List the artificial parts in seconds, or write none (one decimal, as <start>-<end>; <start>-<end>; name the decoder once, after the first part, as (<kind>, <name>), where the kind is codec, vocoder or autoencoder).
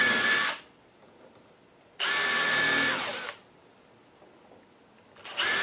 none